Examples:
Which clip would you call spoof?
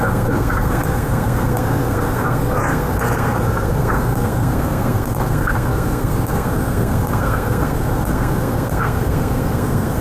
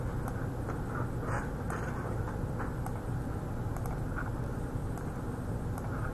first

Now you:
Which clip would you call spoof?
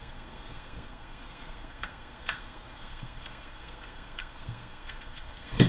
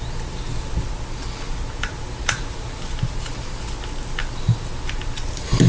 first